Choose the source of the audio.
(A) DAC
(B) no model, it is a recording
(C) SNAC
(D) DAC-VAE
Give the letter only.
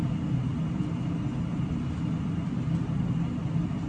B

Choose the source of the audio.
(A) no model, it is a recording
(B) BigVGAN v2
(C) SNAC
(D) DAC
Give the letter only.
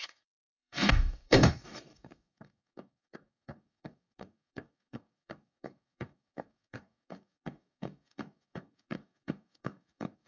D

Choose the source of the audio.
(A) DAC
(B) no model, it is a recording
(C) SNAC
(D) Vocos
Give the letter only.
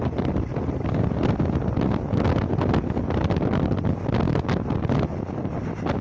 B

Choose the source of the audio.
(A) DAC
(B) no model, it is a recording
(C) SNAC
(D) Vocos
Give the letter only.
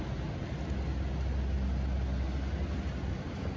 B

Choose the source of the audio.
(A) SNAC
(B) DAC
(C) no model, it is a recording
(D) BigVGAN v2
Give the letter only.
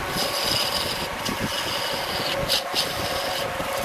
C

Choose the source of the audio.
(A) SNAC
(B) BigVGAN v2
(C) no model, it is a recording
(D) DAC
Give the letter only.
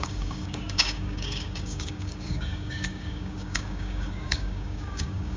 D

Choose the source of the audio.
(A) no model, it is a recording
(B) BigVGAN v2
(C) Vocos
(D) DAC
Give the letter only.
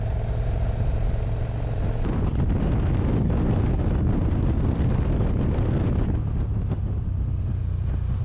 A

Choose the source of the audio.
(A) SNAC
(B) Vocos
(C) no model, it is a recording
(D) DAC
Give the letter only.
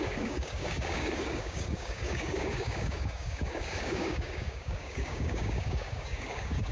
D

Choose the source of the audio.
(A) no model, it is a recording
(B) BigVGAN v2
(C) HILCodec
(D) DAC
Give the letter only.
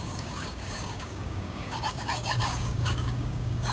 D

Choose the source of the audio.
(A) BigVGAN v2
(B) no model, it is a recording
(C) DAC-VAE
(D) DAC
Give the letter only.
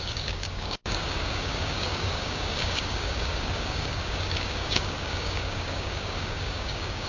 D